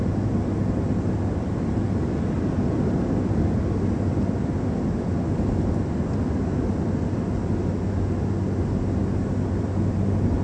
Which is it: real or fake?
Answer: real